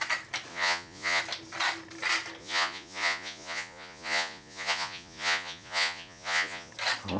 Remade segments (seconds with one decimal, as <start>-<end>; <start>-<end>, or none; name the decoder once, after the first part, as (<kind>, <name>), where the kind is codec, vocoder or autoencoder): 0.5-1.2 (vocoder, Vocos); 2.4-6.7